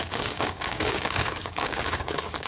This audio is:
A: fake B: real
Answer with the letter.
A